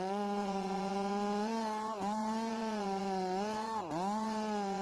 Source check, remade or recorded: remade